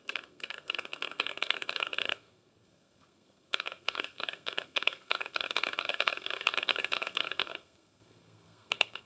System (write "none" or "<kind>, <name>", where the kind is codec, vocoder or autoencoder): codec, SNAC